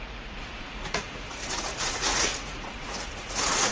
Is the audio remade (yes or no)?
yes